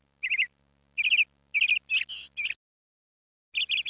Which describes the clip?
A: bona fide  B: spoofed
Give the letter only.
A